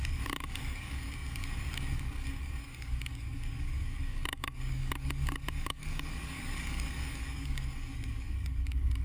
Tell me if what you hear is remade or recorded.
remade